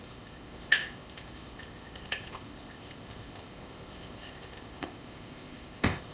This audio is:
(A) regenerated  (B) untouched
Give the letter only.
A